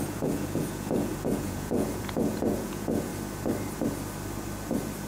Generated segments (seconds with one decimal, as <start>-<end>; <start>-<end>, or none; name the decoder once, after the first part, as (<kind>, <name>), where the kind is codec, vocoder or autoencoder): 0.0-3.1 (vocoder, Vocos)